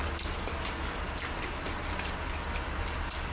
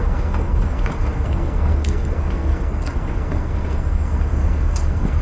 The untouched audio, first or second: first